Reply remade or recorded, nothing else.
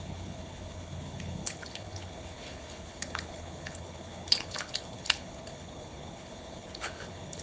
remade